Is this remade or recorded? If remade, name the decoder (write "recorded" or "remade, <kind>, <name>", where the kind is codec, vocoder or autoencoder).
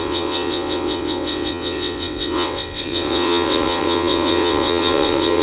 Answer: remade, vocoder, WaveNeXt